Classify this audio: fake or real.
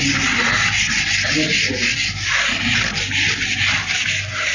real